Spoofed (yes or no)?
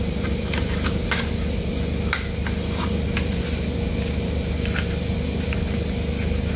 no